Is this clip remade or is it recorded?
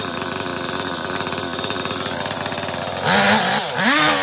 recorded